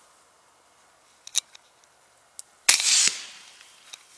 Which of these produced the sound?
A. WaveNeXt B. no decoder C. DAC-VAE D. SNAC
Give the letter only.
B